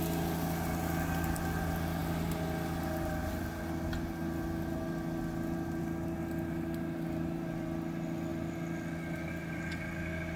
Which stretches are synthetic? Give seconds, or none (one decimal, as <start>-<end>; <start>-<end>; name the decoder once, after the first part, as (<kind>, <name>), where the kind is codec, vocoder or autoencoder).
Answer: none